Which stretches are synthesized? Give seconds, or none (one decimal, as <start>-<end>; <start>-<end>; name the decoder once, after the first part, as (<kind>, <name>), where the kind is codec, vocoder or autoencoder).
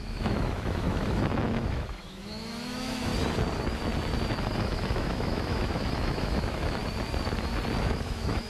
0.0-3.1 (autoencoder, DAC-VAE); 4.4-6.8; 7.8-8.5